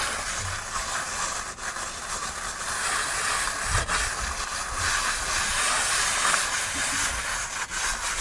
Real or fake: real